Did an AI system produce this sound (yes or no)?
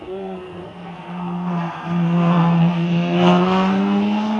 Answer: yes